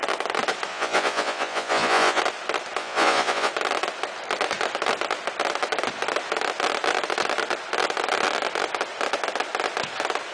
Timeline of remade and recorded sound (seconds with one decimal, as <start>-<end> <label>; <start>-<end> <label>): 0.0-0.7 recorded; 0.7-2.2 remade; 2.2-2.8 recorded; 2.8-3.5 remade; 3.5-10.3 recorded